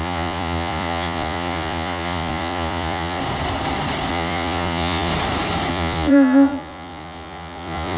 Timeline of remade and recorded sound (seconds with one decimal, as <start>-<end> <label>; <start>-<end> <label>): 0.0-3.2 remade; 3.2-4.1 recorded; 4.1-5.1 remade; 5.1-5.7 recorded; 5.7-8.0 remade